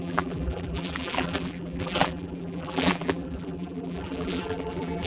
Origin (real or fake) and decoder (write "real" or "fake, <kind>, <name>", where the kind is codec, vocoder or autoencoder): fake, vocoder, BigVGAN v2